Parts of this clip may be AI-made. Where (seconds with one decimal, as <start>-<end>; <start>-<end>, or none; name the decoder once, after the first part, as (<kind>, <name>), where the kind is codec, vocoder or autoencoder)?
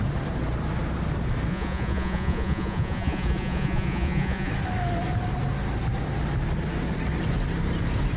1.5-4.5 (vocoder, Vocos)